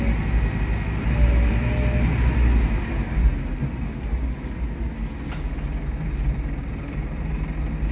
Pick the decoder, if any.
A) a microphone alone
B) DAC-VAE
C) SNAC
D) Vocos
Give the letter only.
A